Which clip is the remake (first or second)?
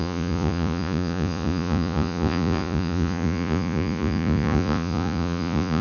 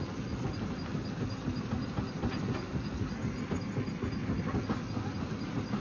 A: first